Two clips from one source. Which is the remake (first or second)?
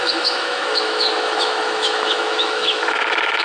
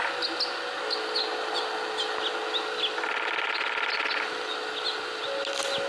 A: first